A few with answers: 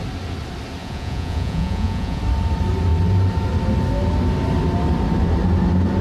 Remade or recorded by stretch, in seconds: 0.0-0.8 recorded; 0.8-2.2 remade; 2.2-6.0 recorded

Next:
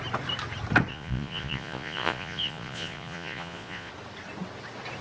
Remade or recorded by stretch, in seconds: 0.0-0.9 recorded; 0.9-3.9 remade; 3.9-5.0 recorded

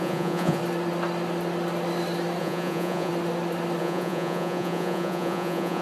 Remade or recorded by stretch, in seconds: 0.0-0.6 remade; 0.6-2.4 recorded; 2.4-3.1 remade; 3.1-3.8 recorded; 3.8-5.8 remade

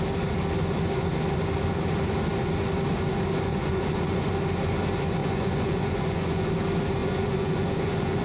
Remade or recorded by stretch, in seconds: 0.0-3.5 recorded; 3.5-4.3 remade; 4.3-5.2 recorded; 5.2-6.5 remade; 6.5-7.0 recorded; 7.0-8.2 remade

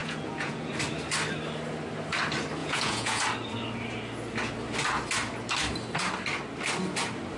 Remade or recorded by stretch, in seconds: 0.0-0.7 remade; 0.7-2.6 recorded; 2.6-3.2 remade; 3.2-7.4 recorded

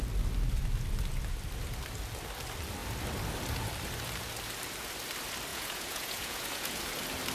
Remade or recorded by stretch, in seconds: 0.0-5.5 recorded; 5.5-6.8 remade; 6.8-7.3 recorded

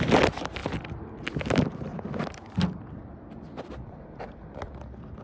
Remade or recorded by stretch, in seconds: 0.0-5.2 recorded

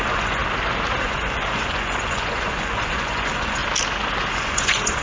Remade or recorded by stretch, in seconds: 0.0-0.4 remade; 0.4-1.0 recorded; 1.0-3.6 remade; 3.6-4.3 recorded; 4.3-5.0 remade